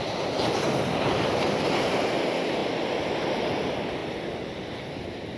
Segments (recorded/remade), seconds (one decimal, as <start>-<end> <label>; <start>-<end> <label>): 0.0-5.4 recorded